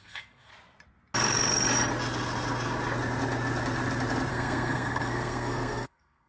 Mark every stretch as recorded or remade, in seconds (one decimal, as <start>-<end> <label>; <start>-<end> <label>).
0.0-0.5 remade; 0.5-4.3 recorded; 4.3-6.3 remade